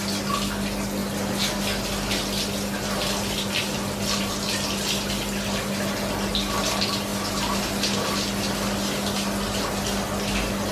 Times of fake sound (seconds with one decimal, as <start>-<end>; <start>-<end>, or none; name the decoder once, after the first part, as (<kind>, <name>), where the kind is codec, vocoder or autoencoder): none